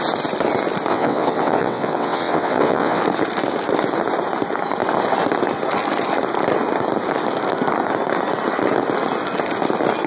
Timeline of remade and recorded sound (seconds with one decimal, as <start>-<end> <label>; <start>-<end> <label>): 0.0-0.9 recorded; 0.9-3.0 remade; 3.0-10.1 recorded